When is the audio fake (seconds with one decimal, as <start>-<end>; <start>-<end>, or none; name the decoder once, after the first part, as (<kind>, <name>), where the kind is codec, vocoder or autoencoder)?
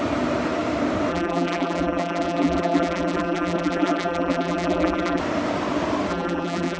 1.1-5.2 (vocoder, BigVGAN v2); 6.1-6.8